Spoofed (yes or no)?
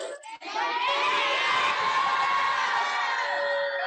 no